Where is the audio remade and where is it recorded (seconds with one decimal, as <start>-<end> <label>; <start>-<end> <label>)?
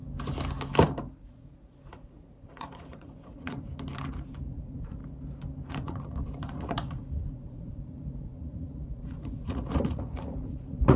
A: 0.0-1.2 recorded; 1.2-3.7 remade; 3.7-4.5 recorded; 4.5-5.0 remade; 5.0-5.7 recorded; 5.7-11.0 remade